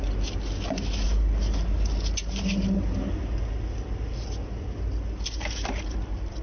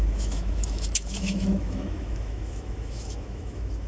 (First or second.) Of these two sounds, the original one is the first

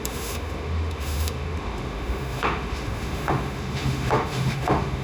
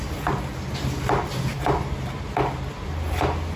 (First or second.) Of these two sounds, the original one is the second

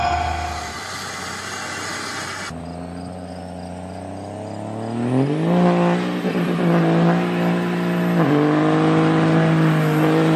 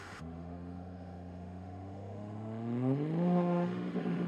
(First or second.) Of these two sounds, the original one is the first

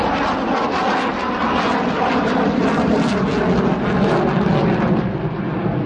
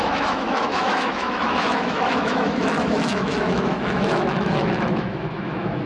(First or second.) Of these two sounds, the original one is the first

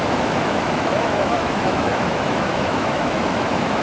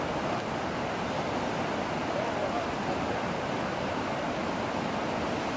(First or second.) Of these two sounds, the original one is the second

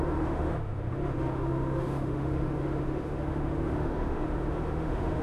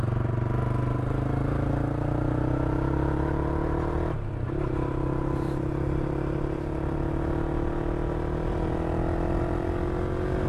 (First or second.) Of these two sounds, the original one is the second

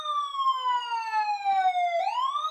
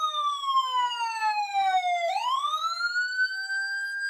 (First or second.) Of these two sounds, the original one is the first